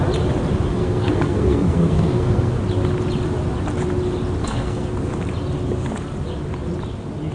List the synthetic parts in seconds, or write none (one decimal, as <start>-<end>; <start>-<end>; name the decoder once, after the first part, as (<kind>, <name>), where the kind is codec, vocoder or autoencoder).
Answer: 0.7-2.6 (codec, SNAC); 4.4-4.9